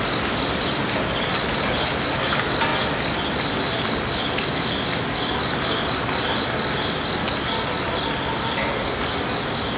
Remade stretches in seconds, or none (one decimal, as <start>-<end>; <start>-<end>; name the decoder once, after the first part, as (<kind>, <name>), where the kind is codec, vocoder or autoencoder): none